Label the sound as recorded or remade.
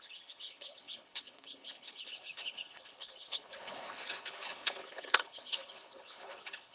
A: remade